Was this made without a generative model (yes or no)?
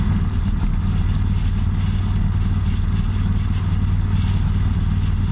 yes